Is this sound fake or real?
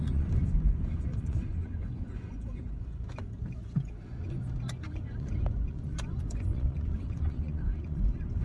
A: fake